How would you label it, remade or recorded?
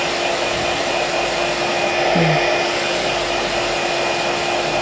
recorded